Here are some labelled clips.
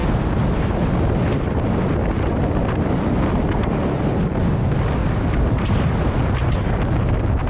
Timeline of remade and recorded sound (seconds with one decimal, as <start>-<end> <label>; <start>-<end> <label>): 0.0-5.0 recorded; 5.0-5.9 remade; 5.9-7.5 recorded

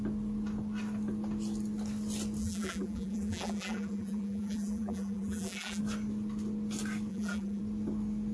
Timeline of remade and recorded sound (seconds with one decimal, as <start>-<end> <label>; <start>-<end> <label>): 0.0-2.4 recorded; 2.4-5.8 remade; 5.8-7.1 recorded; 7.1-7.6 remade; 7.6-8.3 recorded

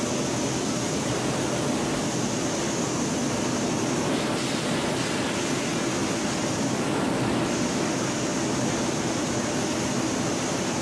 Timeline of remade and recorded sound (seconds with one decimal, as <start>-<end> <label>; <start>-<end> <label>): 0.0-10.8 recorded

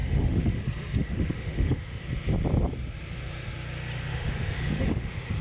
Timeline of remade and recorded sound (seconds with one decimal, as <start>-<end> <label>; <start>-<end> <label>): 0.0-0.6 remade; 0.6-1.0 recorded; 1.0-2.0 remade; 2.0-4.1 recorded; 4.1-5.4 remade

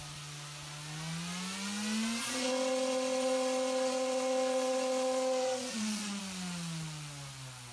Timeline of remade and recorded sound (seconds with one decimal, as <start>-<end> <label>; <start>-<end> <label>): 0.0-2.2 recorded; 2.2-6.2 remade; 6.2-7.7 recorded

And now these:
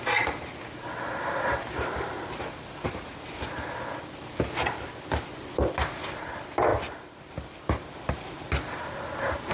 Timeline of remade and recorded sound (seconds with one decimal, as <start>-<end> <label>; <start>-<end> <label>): 0.0-9.5 recorded